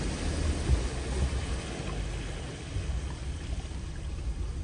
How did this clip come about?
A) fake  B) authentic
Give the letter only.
B